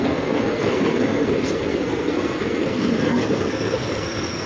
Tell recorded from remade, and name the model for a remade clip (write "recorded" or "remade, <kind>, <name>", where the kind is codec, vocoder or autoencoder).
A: remade, codec, SNAC